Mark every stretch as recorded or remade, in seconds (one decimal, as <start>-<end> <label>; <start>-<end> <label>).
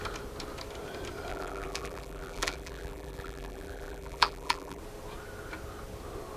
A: 0.0-1.3 recorded; 1.3-4.8 remade; 4.8-6.4 recorded